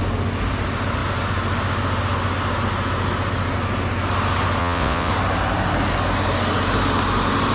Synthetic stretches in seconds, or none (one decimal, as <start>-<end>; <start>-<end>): 4.6-5.1